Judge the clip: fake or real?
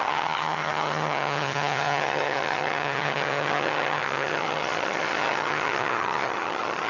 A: fake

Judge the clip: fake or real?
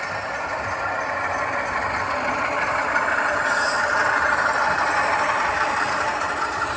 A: real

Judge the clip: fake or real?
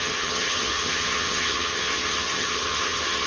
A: fake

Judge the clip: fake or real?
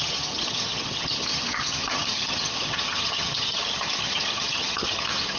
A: fake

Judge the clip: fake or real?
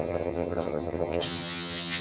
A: fake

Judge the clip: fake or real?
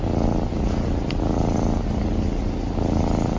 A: real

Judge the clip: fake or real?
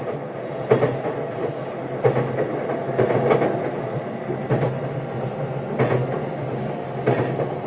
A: real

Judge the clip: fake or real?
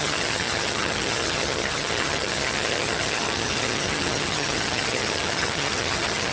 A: fake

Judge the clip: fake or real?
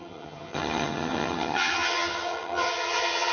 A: fake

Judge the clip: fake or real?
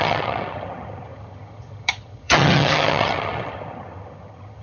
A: fake